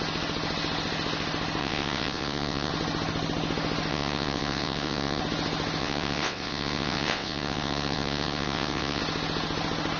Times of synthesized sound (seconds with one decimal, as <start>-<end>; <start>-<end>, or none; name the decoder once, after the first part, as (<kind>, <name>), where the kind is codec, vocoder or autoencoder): 1.6-2.7 (vocoder, WaveNeXt); 3.9-5.2; 5.8-9.0